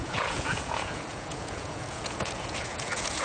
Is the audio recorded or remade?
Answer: remade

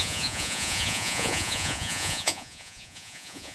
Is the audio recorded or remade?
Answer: remade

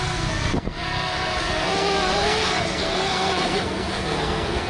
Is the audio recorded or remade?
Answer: remade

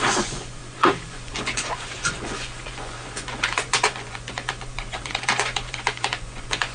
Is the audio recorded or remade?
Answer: remade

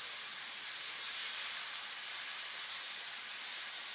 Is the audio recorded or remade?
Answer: recorded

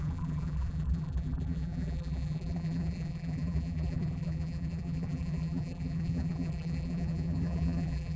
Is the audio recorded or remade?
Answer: remade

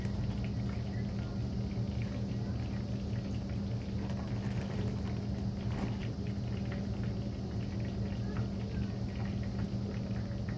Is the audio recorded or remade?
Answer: recorded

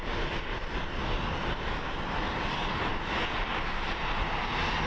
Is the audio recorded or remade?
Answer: recorded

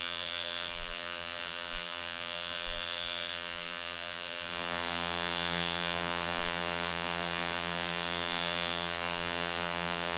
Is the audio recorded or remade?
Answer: remade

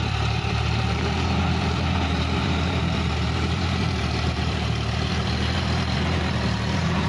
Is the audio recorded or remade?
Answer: remade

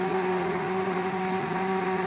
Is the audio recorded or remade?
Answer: remade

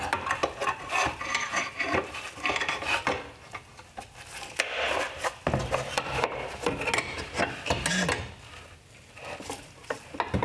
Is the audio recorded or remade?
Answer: recorded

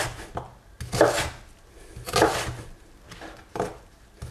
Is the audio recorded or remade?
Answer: recorded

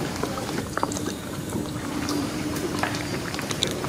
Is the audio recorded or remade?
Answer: remade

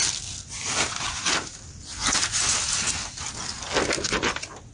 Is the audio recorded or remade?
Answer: recorded